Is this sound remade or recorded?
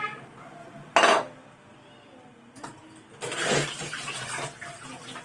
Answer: recorded